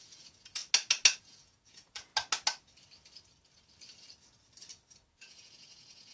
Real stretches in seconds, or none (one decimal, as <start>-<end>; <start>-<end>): 0.6-1.2; 2.1-5.1